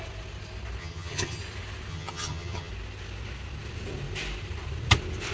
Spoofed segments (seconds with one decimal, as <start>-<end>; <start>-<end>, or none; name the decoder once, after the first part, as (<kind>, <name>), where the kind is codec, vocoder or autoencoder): 0.8-1.4 (vocoder, HiFi-GAN); 1.9-2.7